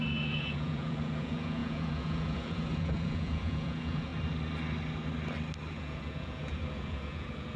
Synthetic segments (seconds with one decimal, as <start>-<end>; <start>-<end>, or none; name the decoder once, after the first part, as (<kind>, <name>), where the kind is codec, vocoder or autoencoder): 0.0-4.1 (vocoder, Vocos); 5.7-7.6